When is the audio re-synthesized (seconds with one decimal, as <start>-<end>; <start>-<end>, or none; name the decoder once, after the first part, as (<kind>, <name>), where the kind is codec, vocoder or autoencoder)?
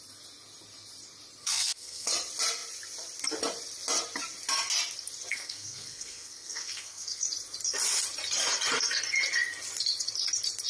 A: 1.4-2.1 (codec, SNAC); 5.3-7.2